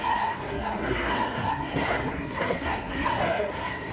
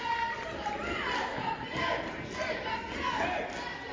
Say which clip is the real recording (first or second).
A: second